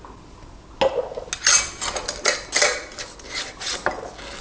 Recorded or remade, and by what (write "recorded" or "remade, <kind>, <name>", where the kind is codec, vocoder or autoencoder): recorded